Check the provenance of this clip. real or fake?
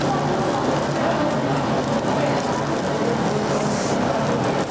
real